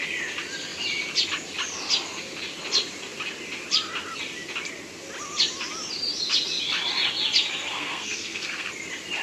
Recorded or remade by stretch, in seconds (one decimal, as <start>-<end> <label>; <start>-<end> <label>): 0.0-7.7 recorded; 7.7-8.7 remade; 8.7-9.2 recorded